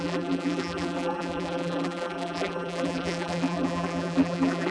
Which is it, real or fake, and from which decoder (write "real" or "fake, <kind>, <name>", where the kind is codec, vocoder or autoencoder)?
fake, vocoder, BigVGAN v2